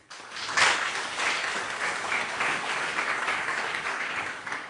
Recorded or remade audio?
remade